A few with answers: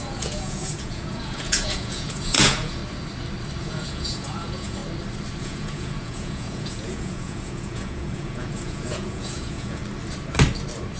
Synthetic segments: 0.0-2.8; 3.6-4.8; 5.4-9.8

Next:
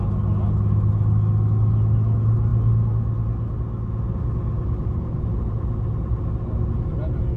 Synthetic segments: none

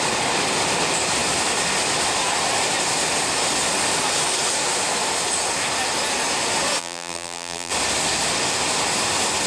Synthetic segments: 6.8-7.7

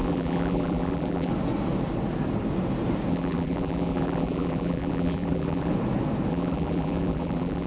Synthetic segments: 0.0-1.3; 3.1-5.7; 6.3-7.7

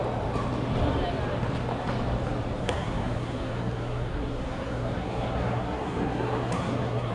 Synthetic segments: 2.6-7.1

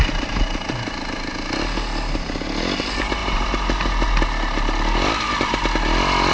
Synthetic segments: none